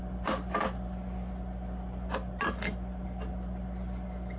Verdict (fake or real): real